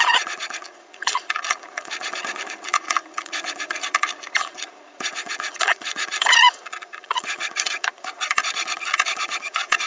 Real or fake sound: fake